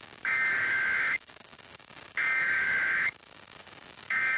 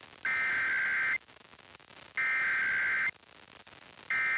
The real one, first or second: second